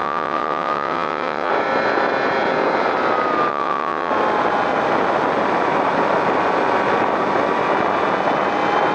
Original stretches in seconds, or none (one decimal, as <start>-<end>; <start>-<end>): 1.5-3.5; 4.1-8.9